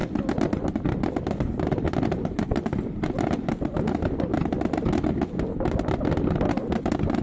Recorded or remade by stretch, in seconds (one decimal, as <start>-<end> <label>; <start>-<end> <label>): 0.0-2.8 remade; 2.8-7.2 recorded